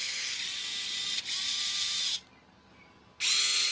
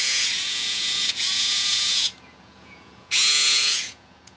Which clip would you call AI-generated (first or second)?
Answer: second